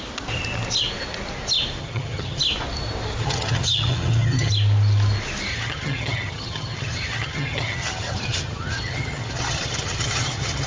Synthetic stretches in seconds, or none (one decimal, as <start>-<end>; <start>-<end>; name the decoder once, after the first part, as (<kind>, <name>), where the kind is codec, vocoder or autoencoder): 1.8-2.4 (vocoder, HiFi-GAN); 3.2-4.5; 5.5-10.7